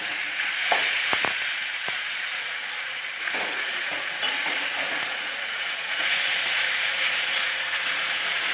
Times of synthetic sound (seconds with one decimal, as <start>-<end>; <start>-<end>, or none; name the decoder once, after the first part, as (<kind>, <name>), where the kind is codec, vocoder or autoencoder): 0.0-2.6 (vocoder, Vocos); 3.2-8.5